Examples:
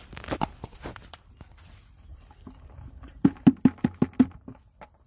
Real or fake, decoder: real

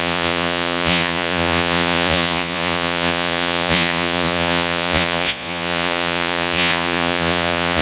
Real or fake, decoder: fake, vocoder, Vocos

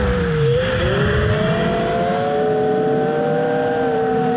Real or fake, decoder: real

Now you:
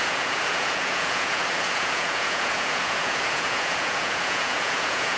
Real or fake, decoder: fake, vocoder, Vocos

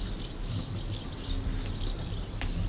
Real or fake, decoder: real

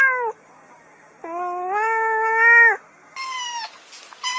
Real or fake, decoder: real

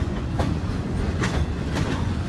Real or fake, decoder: fake, vocoder, Vocos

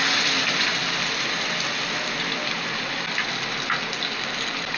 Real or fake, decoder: real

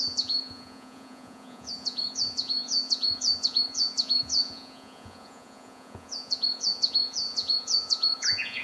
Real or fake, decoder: fake, vocoder, Vocos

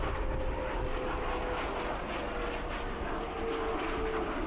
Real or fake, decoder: real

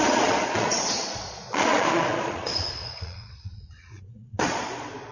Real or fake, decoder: fake, vocoder, Vocos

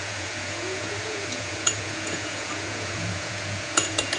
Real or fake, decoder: fake, vocoder, Vocos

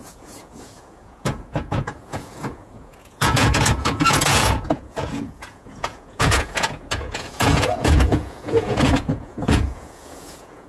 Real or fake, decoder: fake, vocoder, Vocos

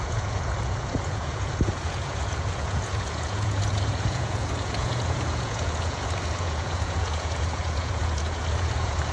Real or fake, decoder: fake, vocoder, Vocos